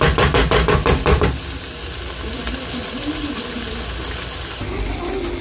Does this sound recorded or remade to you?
recorded